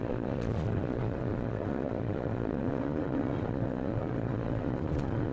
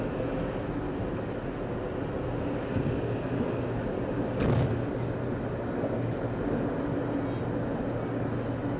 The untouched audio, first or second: second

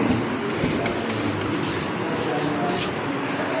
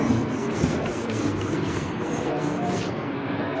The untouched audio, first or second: first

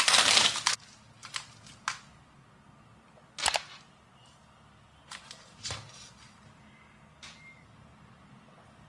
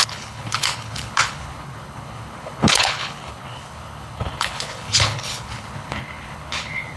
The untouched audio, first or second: first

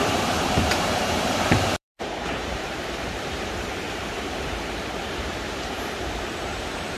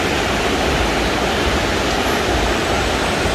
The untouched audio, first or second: second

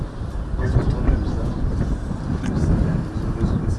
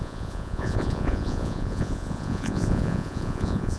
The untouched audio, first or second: first